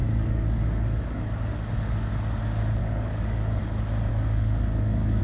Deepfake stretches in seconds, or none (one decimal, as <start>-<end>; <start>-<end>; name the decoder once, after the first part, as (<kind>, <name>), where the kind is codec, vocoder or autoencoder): 0.0-2.1 (codec, DAC); 2.8-3.6; 4.1-5.2

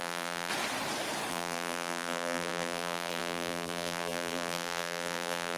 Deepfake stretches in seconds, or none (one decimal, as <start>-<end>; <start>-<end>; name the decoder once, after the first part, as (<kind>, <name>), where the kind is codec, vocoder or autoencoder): 0.0-0.5 (vocoder, BigVGAN v2); 1.3-5.6

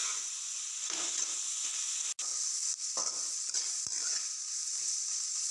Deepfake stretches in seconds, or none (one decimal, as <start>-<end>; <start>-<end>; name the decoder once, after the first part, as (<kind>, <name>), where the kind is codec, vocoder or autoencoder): 0.0-0.6 (vocoder, Vocos)

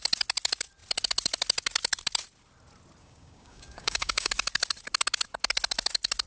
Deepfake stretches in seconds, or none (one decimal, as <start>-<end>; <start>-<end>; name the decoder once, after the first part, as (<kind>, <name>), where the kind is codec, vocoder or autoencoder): 3.0-4.3 (codec, DAC)

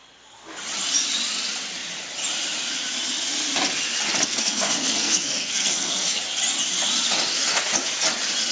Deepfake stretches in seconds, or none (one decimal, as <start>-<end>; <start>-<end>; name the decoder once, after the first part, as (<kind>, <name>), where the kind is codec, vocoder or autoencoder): 4.3-6.2 (codec, SNAC)

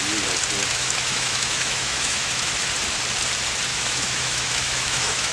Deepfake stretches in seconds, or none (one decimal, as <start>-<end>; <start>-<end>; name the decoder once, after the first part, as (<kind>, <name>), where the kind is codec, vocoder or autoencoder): 0.7-2.5 (autoencoder, DAC-VAE); 3.7-5.3

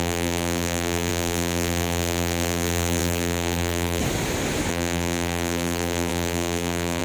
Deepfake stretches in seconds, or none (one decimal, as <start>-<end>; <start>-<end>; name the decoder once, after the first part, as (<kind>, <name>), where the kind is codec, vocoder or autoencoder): 0.0-4.0 (vocoder, BigVGAN v2); 4.7-7.0